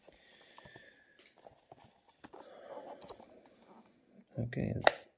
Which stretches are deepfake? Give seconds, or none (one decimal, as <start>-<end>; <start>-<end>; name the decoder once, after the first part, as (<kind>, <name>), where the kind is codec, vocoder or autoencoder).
0.0-0.8 (vocoder, BigVGAN v2); 2.9-5.2